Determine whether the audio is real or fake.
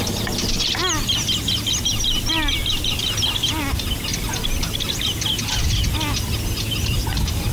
real